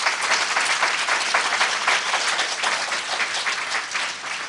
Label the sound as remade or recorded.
recorded